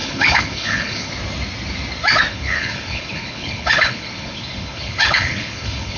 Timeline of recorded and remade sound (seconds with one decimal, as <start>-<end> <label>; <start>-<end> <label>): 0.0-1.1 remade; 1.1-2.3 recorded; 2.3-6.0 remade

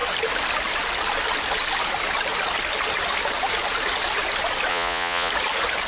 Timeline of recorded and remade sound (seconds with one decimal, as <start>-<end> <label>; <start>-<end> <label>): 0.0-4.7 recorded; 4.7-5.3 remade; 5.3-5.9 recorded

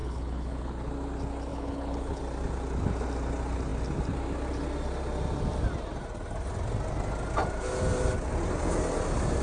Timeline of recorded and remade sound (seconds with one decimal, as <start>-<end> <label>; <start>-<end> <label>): 0.0-0.9 remade; 0.9-1.5 recorded; 1.5-2.2 remade; 2.2-9.4 recorded

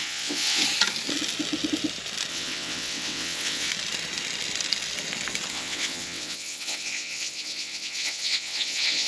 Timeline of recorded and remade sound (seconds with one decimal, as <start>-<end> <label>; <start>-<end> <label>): 0.0-0.6 remade; 0.6-2.3 recorded; 2.3-3.7 remade; 3.7-5.5 recorded; 5.5-9.1 remade

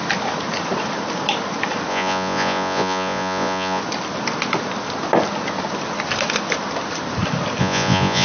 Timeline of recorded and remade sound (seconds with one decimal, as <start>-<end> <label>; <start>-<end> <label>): 0.0-1.9 recorded; 1.9-3.8 remade; 3.8-7.6 recorded; 7.6-8.2 remade

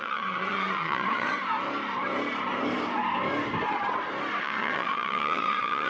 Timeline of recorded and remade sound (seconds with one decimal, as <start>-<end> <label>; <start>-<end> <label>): 0.0-1.4 remade; 1.4-4.4 recorded; 4.4-5.9 remade

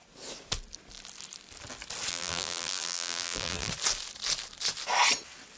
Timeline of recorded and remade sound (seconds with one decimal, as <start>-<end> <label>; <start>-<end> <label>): 0.0-2.1 recorded; 2.1-3.7 remade; 3.7-5.6 recorded

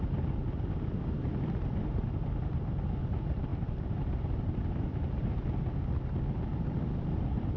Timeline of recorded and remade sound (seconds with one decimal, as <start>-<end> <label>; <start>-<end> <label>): 0.0-7.6 recorded